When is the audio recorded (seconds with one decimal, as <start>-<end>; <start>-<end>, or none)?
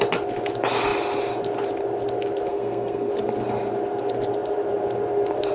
0.0-2.5; 3.1-5.5